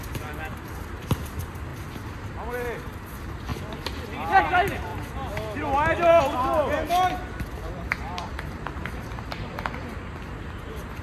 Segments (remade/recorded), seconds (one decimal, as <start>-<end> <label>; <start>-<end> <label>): 0.0-11.0 recorded